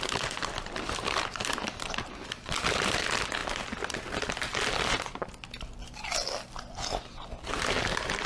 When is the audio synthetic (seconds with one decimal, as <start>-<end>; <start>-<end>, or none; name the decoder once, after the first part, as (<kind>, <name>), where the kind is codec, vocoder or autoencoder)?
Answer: none